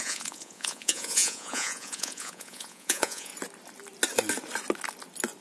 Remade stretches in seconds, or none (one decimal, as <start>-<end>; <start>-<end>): 0.0-3.3